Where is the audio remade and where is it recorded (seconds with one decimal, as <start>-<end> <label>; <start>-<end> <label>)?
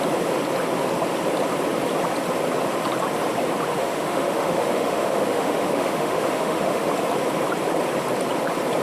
0.0-3.7 recorded; 3.7-6.9 remade; 6.9-8.8 recorded